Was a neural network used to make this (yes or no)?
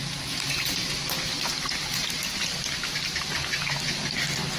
no